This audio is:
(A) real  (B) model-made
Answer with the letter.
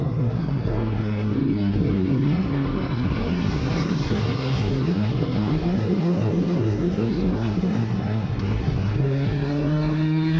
B